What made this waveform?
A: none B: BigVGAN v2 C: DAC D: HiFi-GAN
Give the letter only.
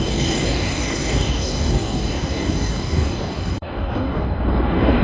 C